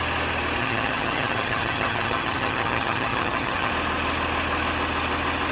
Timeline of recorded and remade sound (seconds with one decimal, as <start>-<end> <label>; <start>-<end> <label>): 0.0-0.6 recorded; 0.6-3.7 remade; 3.7-5.5 recorded